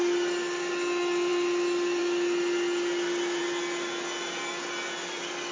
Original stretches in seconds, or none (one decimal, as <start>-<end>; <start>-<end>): 0.0-5.5